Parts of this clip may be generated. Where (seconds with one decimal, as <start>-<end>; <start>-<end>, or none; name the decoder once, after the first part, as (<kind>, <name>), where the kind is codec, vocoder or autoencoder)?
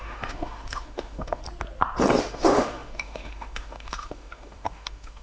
0.0-1.4 (autoencoder, DAC-VAE); 2.2-5.2